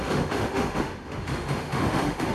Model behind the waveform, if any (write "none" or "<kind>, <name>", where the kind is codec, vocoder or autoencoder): autoencoder, DAC-VAE